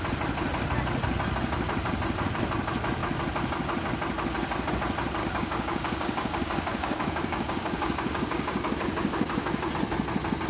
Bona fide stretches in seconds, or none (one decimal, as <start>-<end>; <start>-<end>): 0.0-5.2; 9.7-10.5